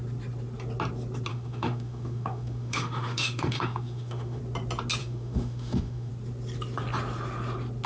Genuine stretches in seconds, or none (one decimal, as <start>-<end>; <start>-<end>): 0.0-1.3; 4.4-5.0; 6.1-7.9